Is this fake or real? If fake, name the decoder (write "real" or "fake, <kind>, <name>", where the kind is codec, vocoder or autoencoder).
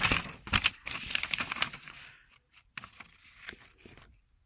real